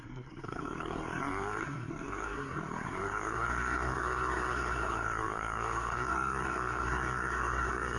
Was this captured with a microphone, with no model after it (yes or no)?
no